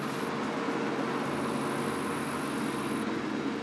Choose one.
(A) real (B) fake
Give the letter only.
A